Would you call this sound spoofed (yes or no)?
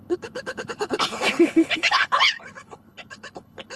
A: yes